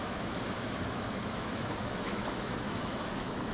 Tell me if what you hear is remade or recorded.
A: remade